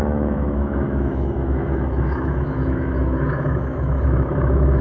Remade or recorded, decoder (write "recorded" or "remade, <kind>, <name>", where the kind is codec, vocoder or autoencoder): remade, autoencoder, DAC-VAE